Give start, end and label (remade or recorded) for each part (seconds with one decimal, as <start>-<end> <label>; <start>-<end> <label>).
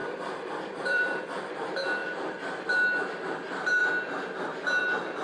0.0-1.2 remade; 1.2-5.2 recorded